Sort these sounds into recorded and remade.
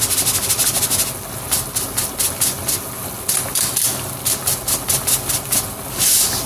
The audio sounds recorded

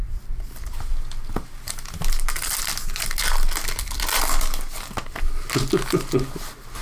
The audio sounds recorded